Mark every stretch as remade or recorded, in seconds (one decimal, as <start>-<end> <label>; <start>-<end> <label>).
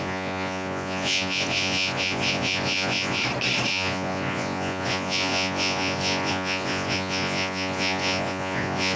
0.0-3.2 remade; 3.2-3.7 recorded; 3.7-9.0 remade